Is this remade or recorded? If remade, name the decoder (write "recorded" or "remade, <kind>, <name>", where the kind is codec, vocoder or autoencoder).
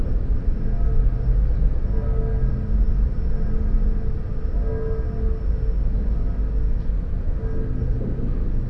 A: recorded